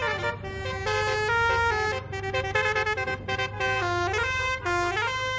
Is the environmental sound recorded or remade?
recorded